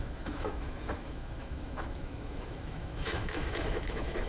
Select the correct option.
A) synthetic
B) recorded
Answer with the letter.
A